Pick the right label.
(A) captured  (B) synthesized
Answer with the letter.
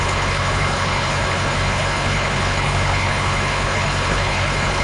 B